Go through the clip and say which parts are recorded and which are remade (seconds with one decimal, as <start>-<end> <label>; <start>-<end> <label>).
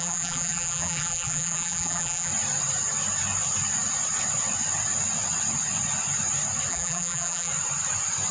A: 0.0-2.3 remade; 2.3-6.7 recorded; 6.7-7.5 remade; 7.5-8.3 recorded